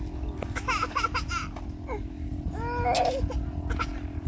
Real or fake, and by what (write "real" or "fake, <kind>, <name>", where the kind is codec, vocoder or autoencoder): real